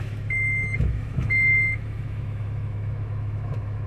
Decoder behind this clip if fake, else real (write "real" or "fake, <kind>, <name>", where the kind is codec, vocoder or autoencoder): fake, autoencoder, DAC-VAE